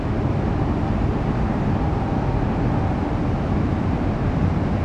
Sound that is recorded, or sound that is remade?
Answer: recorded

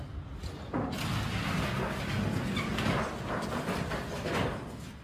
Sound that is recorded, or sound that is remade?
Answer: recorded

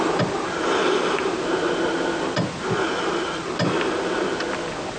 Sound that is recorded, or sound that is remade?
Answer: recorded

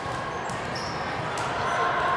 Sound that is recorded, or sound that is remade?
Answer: recorded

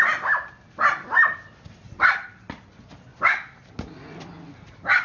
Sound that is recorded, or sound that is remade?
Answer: recorded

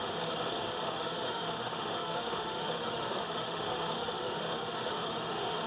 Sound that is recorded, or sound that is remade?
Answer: remade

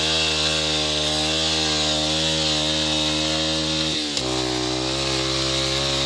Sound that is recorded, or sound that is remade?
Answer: recorded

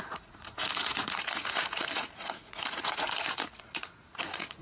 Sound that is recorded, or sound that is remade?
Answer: remade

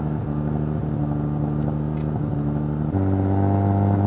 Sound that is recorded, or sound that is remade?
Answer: recorded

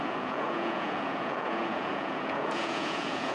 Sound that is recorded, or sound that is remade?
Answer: remade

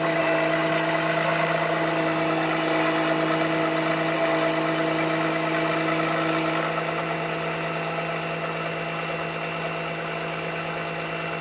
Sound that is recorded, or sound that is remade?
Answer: recorded